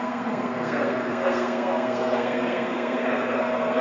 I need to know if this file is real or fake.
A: fake